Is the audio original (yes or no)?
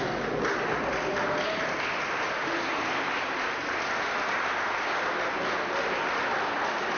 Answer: yes